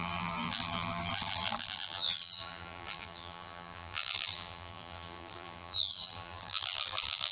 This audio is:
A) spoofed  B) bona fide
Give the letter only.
A